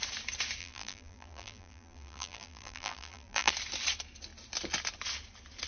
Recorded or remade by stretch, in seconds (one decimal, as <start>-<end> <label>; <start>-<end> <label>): 0.0-0.6 recorded; 0.6-3.5 remade; 3.5-5.7 recorded